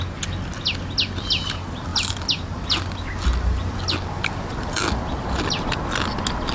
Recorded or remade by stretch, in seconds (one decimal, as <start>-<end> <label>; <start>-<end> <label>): 0.0-6.5 recorded